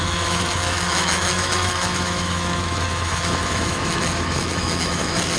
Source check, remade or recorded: remade